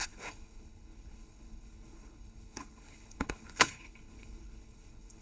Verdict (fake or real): fake